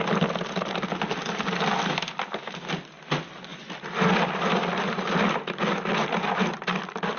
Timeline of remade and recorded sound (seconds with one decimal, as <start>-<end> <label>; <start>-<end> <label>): 0.0-7.2 recorded